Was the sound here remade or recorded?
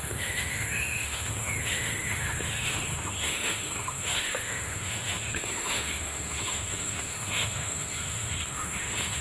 remade